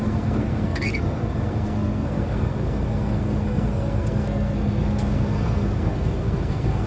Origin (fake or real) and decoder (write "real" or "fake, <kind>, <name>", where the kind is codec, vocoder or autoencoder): fake, codec, SNAC